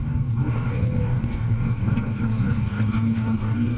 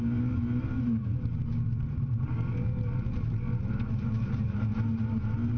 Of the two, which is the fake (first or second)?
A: first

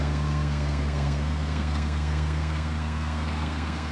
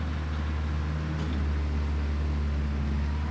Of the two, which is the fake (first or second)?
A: first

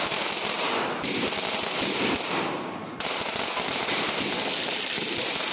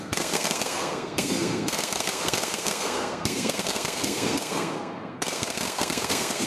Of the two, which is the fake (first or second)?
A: second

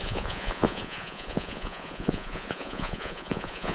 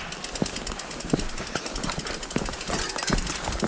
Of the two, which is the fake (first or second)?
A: first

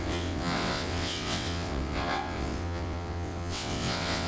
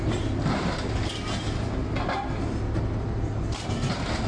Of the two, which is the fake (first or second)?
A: first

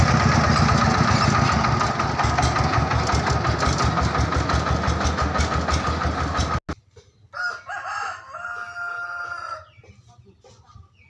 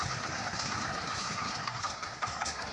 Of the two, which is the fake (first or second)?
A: second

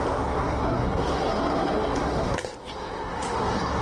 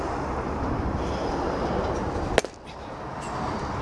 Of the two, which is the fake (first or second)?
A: first